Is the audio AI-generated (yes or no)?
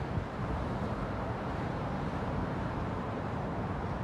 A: yes